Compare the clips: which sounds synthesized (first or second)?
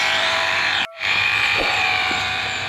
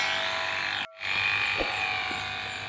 first